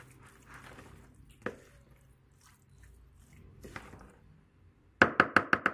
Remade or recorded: recorded